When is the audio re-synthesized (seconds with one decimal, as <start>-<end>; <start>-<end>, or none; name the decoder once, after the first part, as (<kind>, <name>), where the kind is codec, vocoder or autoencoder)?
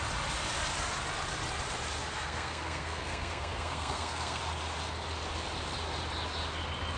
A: 2.0-4.4 (codec, SNAC)